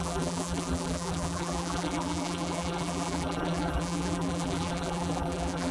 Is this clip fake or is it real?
fake